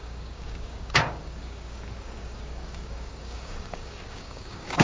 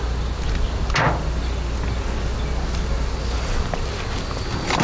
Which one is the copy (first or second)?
first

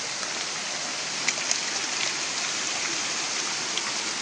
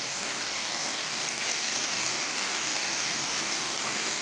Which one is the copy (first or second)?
second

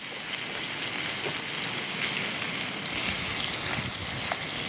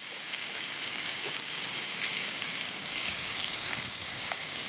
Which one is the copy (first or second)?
second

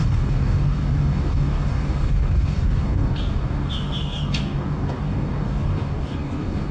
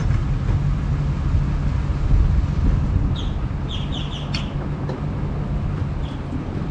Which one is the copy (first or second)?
first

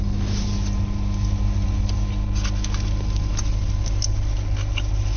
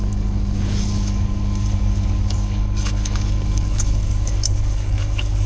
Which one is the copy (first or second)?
second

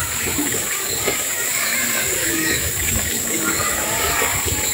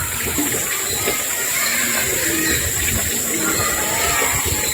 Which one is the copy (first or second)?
first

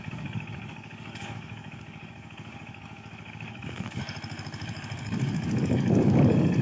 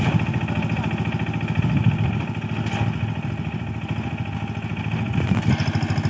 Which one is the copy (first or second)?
first